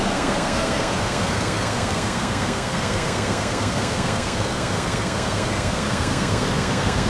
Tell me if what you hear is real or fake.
fake